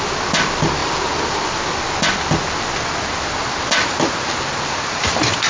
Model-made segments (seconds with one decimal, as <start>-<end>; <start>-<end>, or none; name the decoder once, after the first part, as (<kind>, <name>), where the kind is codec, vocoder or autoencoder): none